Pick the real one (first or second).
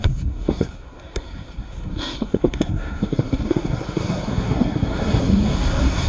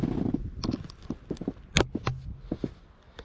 second